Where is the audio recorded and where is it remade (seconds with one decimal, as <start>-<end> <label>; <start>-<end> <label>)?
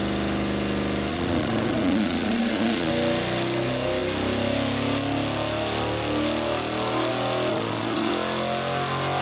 0.0-1.1 recorded; 1.1-2.9 remade; 2.9-7.5 recorded; 7.5-8.1 remade; 8.1-9.2 recorded